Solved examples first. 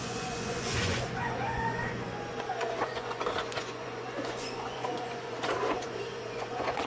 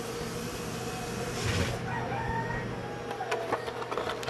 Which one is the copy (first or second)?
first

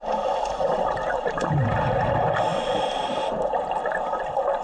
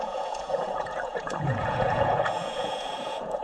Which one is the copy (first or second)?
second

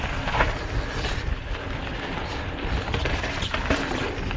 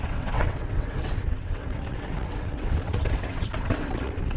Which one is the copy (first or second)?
second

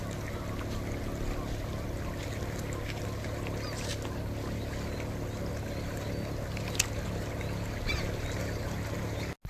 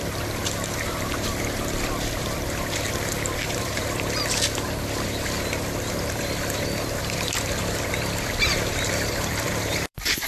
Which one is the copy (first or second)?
second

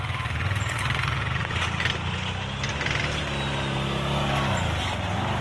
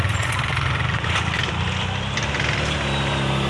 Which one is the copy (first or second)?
second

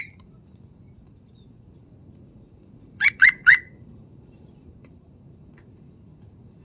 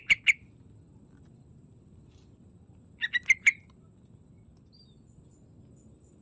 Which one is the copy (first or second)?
first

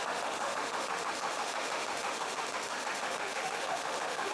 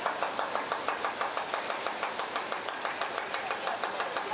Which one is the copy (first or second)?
first